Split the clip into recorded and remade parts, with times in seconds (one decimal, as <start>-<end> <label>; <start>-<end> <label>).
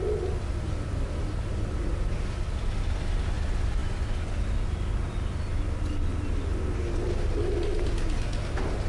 0.0-8.9 recorded